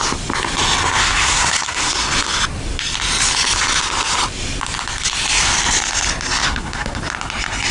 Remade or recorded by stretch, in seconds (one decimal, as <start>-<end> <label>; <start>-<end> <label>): 0.0-1.0 recorded; 1.0-2.0 remade; 2.0-6.4 recorded; 6.4-7.0 remade; 7.0-7.7 recorded